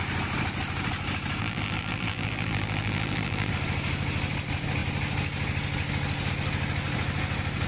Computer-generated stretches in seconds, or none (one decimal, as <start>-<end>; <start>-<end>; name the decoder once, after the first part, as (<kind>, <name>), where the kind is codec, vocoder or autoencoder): 1.4-3.5 (vocoder, BigVGAN v2)